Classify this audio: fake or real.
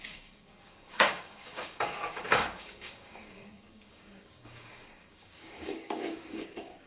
fake